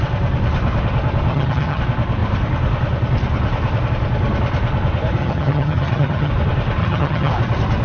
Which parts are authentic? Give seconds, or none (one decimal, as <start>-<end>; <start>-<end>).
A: 0.0-1.3; 1.8-5.2; 6.3-6.8; 7.3-7.8